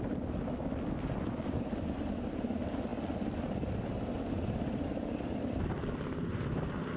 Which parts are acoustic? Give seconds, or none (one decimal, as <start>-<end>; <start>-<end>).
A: 0.0-7.0